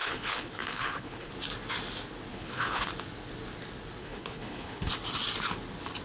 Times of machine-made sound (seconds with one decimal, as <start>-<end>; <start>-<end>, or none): 0.0-1.3; 2.3-2.9; 4.0-4.9